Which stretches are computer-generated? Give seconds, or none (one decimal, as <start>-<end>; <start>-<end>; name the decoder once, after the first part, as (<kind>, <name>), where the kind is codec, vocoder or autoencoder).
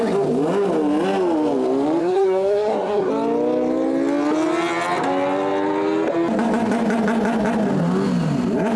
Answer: 2.0-3.1 (codec, SNAC)